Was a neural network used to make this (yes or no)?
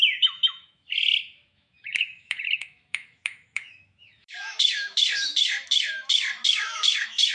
yes